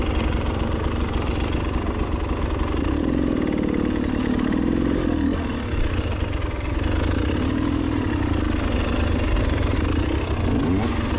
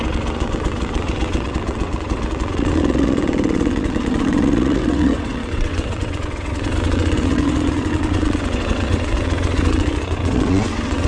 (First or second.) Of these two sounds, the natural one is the first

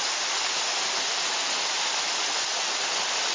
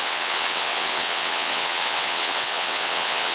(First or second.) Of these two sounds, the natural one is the first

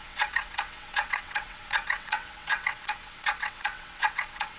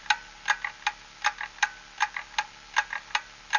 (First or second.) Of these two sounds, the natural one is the second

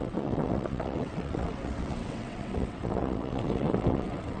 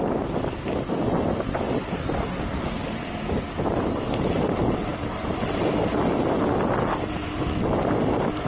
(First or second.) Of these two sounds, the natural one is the second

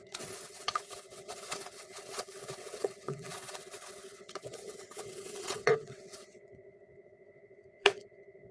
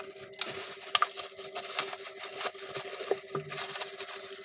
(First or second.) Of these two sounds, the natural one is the second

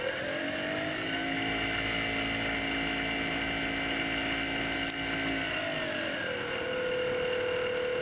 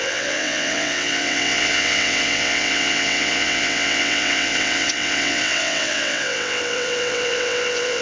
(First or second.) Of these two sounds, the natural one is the first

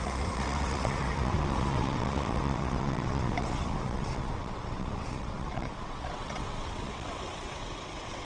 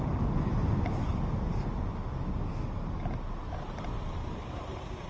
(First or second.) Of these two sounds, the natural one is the second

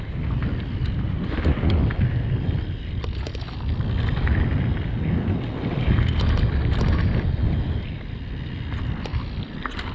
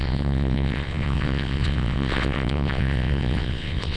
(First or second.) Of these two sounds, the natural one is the first